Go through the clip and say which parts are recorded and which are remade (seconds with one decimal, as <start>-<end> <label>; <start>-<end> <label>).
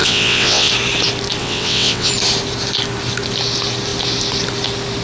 0.0-0.7 remade; 0.7-1.4 recorded; 1.4-2.1 remade; 2.1-5.0 recorded